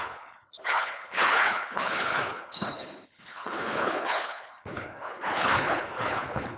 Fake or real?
fake